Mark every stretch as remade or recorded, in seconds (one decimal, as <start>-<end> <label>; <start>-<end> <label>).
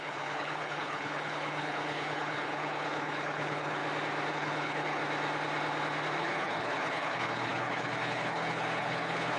0.0-3.8 remade; 3.8-4.3 recorded; 4.3-5.0 remade; 5.0-6.2 recorded; 6.2-9.4 remade